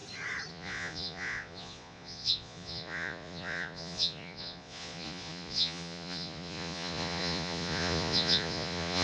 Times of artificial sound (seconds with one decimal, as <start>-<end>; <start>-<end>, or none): 0.5-9.0